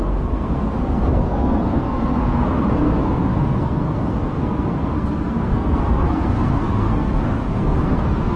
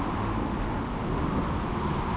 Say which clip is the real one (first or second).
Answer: second